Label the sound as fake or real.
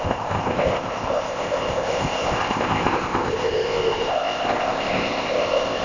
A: fake